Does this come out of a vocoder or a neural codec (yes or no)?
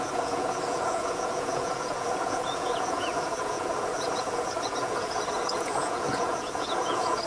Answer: yes